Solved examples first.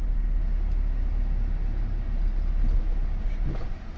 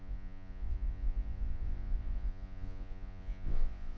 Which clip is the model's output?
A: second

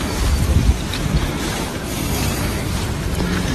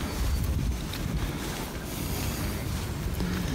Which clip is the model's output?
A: first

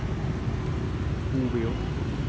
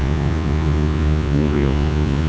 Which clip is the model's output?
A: second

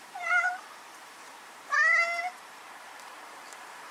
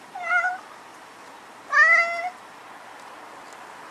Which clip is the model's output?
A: first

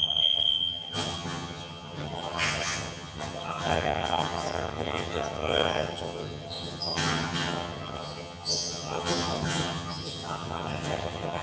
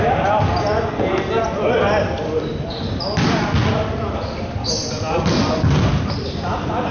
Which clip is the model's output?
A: first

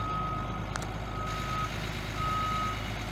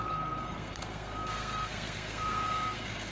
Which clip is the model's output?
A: second